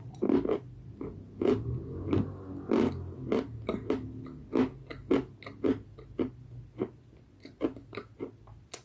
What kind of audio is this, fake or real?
real